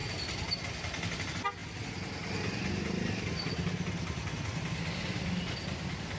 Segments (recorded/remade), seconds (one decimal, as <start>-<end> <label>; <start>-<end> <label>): 0.0-6.2 recorded